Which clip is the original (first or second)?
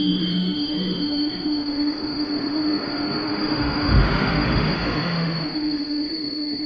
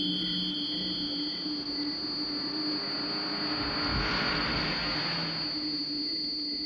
second